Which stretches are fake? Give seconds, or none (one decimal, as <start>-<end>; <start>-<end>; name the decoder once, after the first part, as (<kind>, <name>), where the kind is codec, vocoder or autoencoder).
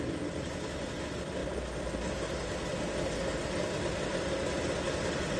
none